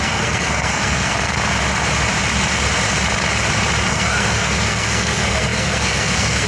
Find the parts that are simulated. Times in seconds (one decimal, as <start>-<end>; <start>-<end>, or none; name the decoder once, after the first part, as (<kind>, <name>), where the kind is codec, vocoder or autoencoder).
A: 0.0-1.3 (codec, SNAC); 3.9-6.5